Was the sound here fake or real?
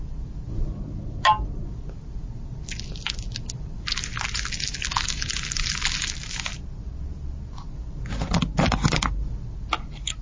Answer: real